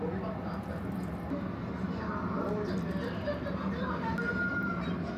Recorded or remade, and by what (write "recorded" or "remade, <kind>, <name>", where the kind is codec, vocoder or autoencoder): recorded